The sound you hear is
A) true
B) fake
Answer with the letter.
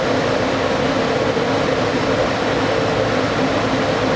A